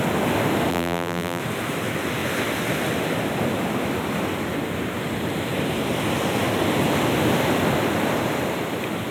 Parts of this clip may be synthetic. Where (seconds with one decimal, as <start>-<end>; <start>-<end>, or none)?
0.7-1.4